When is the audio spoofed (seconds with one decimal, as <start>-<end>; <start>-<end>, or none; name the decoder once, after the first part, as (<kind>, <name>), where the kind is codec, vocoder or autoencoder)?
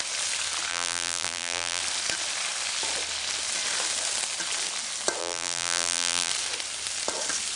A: 0.7-1.8 (vocoder, BigVGAN v2); 5.2-6.3